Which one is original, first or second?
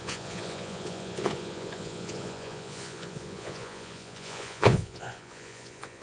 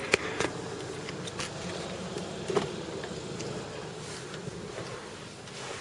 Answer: second